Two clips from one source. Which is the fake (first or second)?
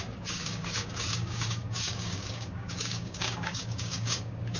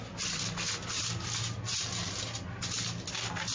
first